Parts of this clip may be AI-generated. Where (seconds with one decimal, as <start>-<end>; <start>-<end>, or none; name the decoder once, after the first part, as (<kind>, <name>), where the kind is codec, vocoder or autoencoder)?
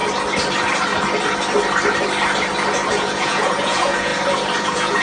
2.9-4.1 (vocoder, Vocos); 4.6-5.0